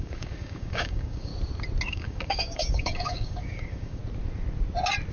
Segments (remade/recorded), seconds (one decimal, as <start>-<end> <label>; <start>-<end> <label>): 0.0-1.3 remade; 1.3-1.9 recorded; 1.9-4.0 remade; 4.0-5.1 recorded